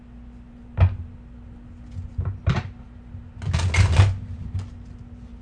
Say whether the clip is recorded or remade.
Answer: recorded